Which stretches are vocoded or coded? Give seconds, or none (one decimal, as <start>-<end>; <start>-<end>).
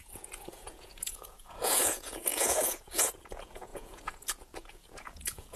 0.0-5.6